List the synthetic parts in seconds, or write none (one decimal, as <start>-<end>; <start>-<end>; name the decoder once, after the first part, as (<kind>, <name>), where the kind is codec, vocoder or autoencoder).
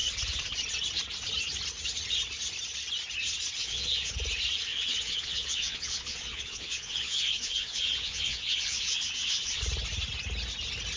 3.6-4.1 (vocoder, Vocos); 4.7-9.6